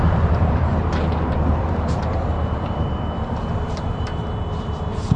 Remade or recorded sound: remade